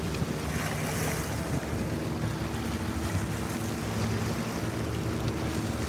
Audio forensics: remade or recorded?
recorded